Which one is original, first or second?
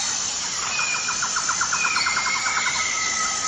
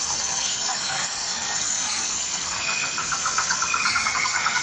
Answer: first